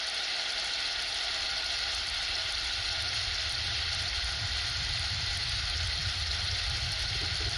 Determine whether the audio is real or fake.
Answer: real